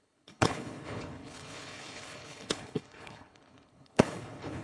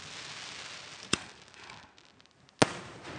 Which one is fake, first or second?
first